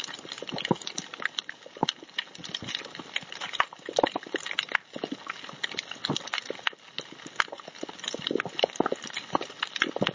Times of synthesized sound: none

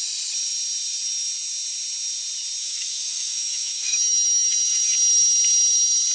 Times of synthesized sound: 2.6-4.9 (autoencoder, DAC-VAE)

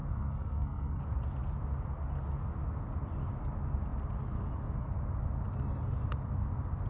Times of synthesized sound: 0.0-1.0 (codec, SNAC)

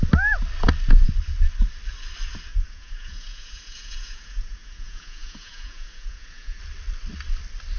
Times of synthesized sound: 2.5-6.6 (vocoder, Vocos)

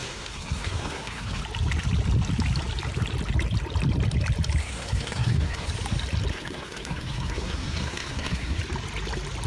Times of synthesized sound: 0.0-1.4 (codec, SNAC); 4.6-5.7; 6.3-8.6